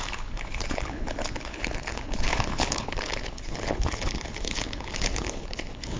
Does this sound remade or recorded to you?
remade